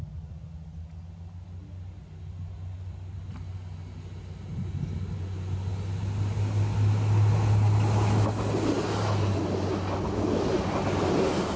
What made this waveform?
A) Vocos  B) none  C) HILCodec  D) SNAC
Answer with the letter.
B